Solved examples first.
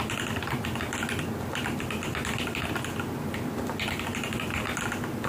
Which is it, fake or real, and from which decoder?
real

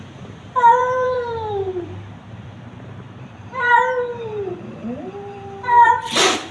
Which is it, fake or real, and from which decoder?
fake, vocoder, BigVGAN v2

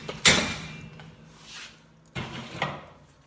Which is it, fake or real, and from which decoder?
real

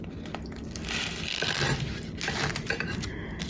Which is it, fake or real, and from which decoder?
real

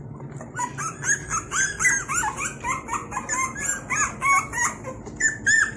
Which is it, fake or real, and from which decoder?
real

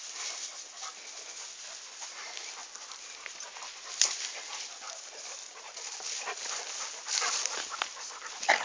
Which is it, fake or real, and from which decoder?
real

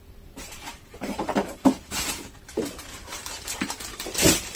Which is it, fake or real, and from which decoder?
fake, vocoder, BigVGAN v2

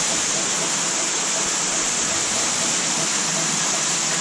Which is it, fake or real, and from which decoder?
real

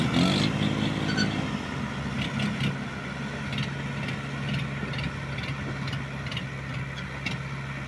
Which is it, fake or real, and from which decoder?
real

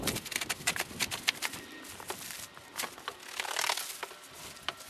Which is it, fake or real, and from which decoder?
real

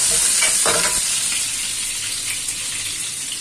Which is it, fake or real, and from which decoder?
real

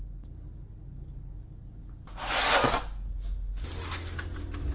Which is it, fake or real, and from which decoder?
real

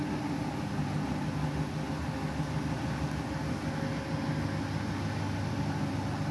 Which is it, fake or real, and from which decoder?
real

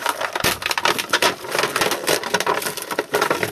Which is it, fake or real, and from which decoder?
real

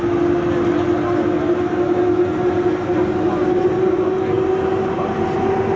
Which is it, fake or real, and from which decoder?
real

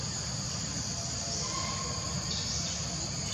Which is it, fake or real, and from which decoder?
fake, vocoder, BigVGAN v2